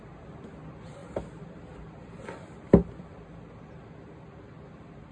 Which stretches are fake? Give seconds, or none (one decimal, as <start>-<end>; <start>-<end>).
none